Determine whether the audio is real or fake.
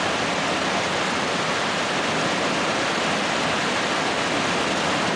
real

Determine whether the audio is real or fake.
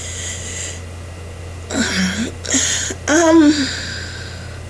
real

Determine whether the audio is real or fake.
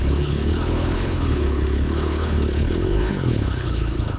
fake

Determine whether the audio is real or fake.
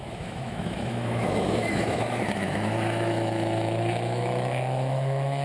fake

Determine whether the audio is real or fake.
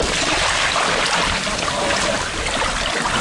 real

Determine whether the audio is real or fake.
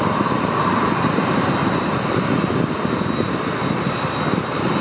fake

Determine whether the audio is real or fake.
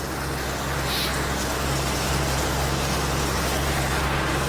real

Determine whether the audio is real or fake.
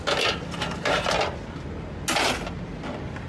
real